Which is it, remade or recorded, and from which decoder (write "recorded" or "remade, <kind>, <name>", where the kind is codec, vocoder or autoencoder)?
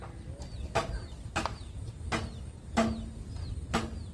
recorded